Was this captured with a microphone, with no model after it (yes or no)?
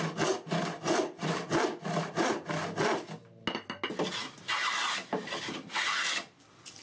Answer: yes